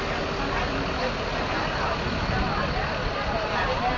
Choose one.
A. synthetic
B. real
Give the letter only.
B